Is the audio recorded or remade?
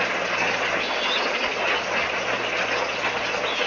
recorded